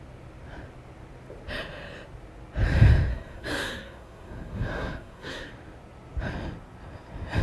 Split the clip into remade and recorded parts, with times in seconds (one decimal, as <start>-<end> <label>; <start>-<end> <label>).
0.0-3.1 recorded; 3.1-5.5 remade; 5.5-7.4 recorded